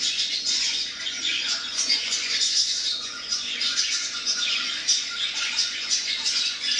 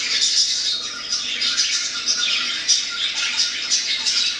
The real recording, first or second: second